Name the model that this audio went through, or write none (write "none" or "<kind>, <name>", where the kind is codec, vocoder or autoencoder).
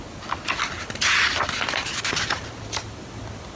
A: none